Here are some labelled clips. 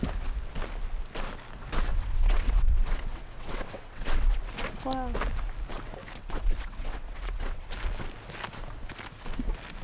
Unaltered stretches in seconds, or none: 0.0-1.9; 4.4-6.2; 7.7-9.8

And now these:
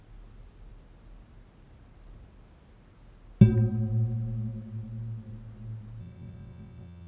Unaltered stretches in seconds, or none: 0.0-6.0